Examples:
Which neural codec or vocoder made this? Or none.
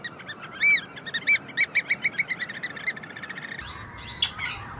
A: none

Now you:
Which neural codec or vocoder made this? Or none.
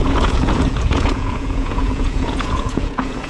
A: vocoder, Vocos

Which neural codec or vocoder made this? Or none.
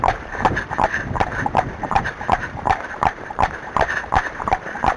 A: vocoder, BigVGAN v2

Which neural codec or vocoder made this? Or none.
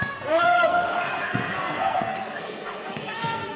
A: codec, SNAC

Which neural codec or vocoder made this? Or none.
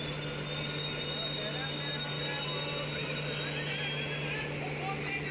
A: none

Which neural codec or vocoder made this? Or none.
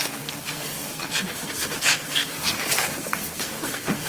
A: codec, SNAC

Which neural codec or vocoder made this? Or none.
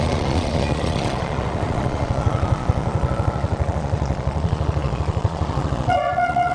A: vocoder, Vocos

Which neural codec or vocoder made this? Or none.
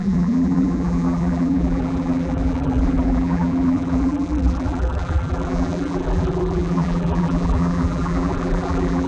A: vocoder, BigVGAN v2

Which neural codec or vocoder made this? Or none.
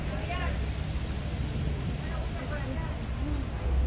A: none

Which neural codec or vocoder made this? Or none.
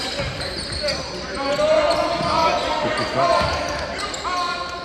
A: none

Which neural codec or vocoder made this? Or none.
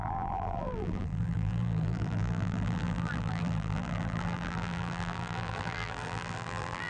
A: vocoder, BigVGAN v2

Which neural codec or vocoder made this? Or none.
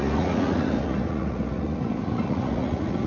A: vocoder, Vocos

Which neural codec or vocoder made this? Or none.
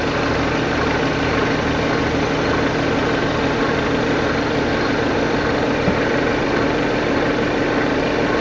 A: none